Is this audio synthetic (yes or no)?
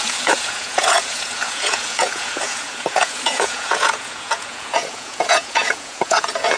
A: yes